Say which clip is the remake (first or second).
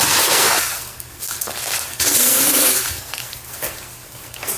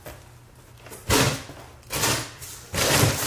first